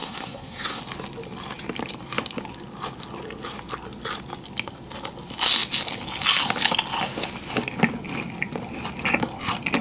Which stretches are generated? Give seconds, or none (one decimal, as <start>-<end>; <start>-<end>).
0.0-0.8